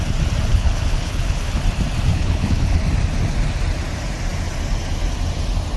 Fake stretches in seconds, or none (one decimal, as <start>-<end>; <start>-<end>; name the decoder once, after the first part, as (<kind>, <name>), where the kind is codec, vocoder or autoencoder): 0.5-1.6 (codec, HILCodec); 2.1-2.8